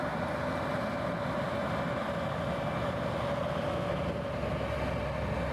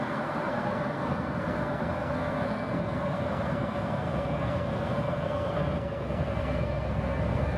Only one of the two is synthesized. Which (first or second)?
second